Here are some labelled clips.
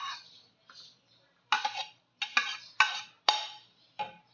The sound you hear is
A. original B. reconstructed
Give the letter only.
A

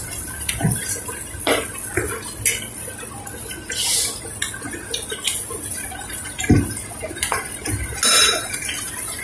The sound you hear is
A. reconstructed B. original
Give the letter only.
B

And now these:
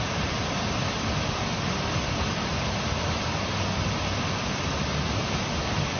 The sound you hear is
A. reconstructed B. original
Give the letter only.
B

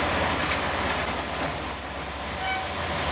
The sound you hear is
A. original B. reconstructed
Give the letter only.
A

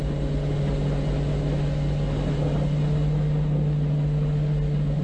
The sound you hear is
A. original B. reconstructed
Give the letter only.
A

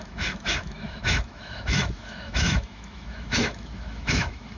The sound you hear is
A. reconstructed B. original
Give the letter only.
A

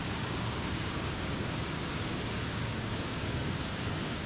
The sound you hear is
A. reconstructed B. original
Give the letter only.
A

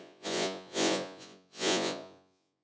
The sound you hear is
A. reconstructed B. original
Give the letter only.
A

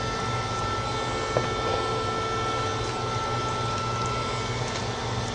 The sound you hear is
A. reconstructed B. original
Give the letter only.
B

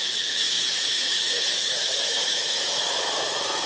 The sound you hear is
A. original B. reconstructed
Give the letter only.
B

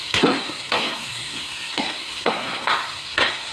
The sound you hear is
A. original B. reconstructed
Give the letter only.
B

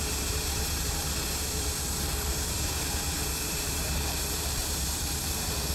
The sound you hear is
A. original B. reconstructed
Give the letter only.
B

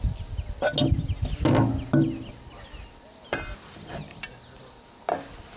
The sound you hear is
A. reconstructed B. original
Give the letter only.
B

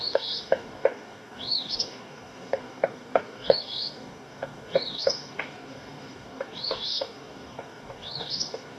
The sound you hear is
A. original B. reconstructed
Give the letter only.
B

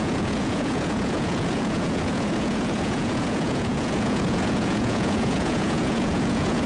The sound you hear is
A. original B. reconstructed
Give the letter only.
B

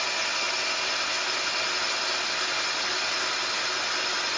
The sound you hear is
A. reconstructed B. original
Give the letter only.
B